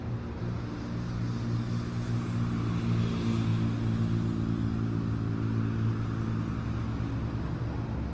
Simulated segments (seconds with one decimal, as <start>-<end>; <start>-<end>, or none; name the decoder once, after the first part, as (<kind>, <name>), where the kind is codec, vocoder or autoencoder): none